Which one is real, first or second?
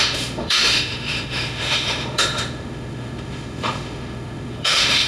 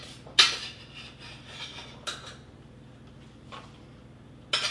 second